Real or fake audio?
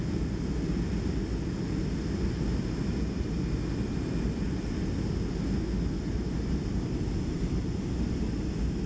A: real